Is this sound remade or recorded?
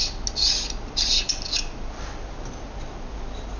recorded